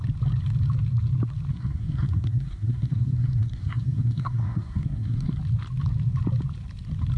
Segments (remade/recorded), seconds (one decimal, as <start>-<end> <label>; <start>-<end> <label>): 0.0-1.5 recorded; 1.5-5.4 remade; 5.4-7.2 recorded